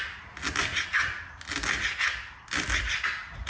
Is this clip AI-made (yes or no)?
no